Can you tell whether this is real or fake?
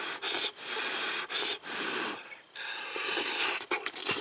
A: real